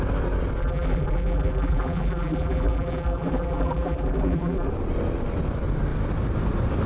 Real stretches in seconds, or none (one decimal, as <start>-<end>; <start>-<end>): 0.0-0.6; 4.7-6.9